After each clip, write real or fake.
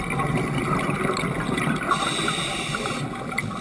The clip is real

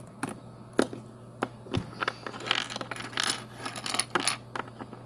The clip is real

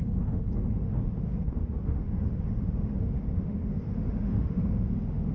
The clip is fake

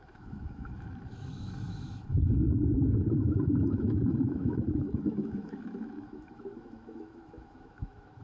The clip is fake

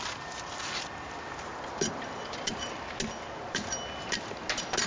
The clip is real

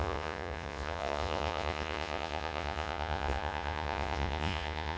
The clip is fake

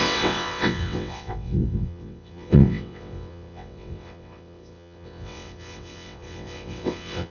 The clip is fake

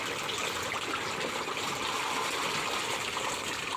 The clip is real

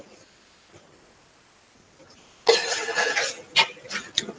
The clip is real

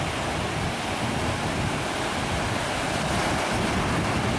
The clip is real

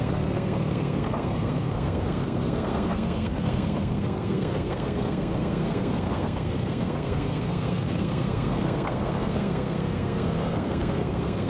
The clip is fake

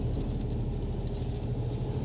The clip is real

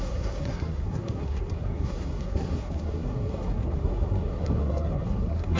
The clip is fake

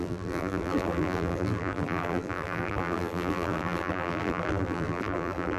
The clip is fake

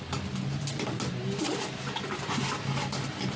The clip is real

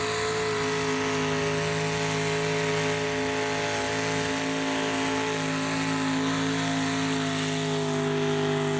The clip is real